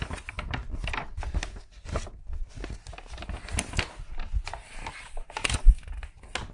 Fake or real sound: real